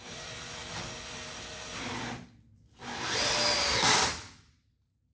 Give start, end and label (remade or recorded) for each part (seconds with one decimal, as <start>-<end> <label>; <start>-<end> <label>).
0.0-5.1 recorded